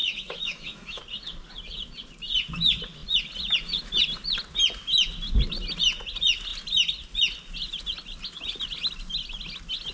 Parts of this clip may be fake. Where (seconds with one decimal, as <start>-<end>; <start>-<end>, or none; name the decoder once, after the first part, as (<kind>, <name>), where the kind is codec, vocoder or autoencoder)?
0.0-1.0 (autoencoder, DAC-VAE)